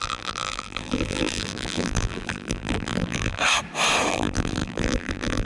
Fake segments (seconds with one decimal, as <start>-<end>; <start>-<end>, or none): 0.0-3.4; 4.1-5.5